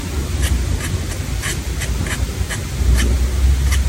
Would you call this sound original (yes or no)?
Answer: yes